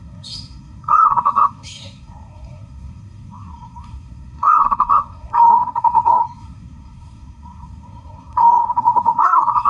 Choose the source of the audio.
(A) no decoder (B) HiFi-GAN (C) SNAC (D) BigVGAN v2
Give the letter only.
C